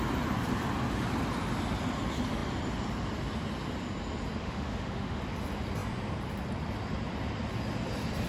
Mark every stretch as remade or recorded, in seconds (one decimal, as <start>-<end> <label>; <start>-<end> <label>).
0.0-4.4 recorded; 4.4-5.2 remade; 5.2-8.3 recorded